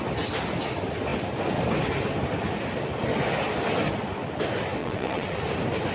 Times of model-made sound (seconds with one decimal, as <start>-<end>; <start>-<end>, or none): 4.8-5.4

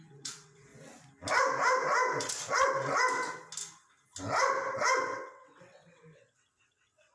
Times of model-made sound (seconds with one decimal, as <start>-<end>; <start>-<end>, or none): 0.0-0.7; 5.0-7.1

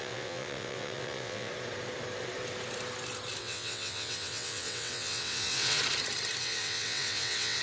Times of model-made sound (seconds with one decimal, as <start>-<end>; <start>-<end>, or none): 0.0-1.5; 3.4-5.8; 6.4-7.6

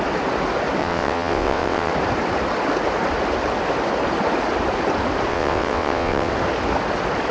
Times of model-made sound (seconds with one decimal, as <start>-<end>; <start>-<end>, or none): 0.8-1.9; 5.3-6.3

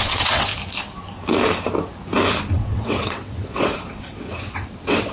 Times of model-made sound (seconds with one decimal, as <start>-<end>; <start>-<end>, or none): 0.0-0.5; 2.5-5.1

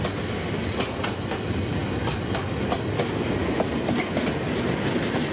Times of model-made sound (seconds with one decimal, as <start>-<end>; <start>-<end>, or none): none

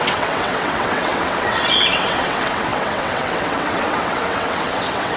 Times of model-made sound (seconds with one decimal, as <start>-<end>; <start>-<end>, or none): 0.0-5.2

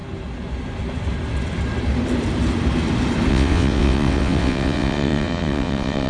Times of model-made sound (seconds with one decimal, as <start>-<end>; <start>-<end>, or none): 3.3-6.1